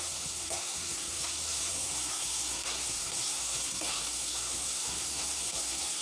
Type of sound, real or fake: fake